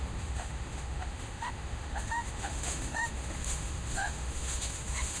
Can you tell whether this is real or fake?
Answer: fake